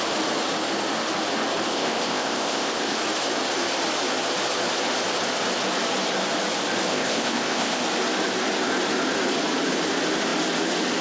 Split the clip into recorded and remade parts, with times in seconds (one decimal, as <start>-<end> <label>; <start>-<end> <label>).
0.0-1.7 recorded; 1.7-3.0 remade; 3.0-6.9 recorded; 6.9-7.8 remade; 7.8-11.0 recorded